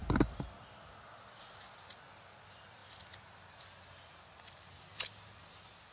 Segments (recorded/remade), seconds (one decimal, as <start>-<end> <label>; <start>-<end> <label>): 0.0-5.9 recorded